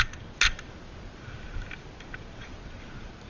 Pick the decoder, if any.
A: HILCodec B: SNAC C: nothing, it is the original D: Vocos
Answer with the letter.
C